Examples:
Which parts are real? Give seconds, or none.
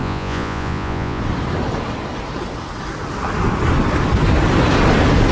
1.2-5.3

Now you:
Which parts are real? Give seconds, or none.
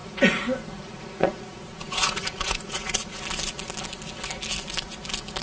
3.2-5.4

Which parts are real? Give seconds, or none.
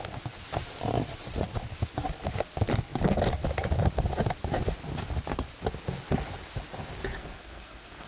0.0-7.1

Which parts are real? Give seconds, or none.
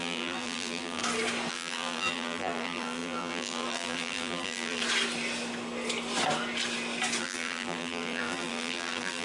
1.0-1.5; 4.8-7.2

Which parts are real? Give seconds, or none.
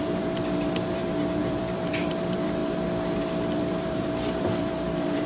2.6-3.2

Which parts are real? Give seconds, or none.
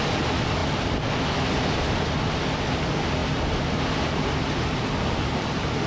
0.0-5.9